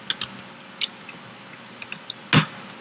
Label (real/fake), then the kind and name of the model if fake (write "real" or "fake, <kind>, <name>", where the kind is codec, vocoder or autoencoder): real